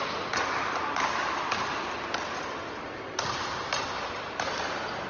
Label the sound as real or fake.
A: real